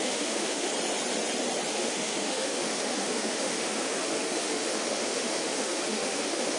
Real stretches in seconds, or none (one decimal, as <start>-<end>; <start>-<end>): 0.7-1.7